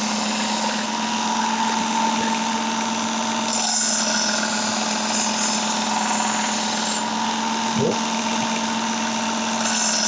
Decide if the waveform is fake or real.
real